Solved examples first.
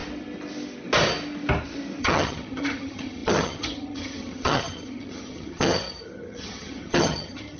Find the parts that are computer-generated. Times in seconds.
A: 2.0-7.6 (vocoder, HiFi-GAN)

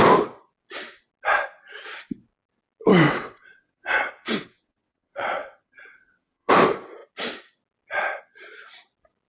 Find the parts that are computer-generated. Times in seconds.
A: 2.9-6.5 (vocoder, WaveNeXt)